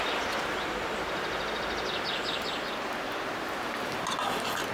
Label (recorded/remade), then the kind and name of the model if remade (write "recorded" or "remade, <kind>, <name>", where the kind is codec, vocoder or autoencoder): recorded